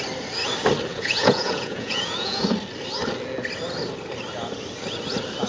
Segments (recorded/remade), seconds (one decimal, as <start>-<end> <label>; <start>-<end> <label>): 0.0-0.9 recorded; 0.9-2.4 remade; 2.4-5.5 recorded